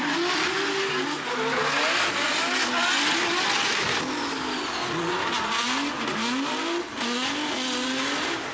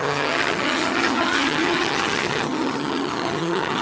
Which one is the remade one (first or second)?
second